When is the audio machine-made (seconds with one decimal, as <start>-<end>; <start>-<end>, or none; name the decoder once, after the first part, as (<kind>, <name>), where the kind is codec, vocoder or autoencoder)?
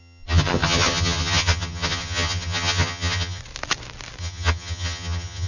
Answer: 0.0-3.4 (vocoder, HiFi-GAN); 4.2-5.5